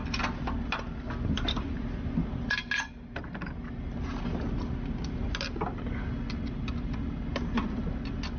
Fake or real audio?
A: real